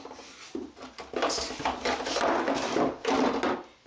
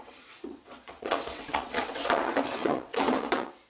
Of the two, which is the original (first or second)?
first